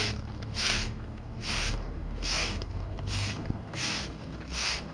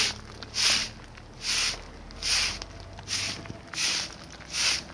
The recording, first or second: second